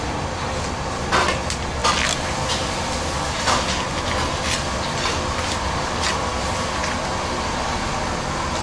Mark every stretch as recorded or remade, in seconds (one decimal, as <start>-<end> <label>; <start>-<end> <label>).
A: 0.0-8.6 recorded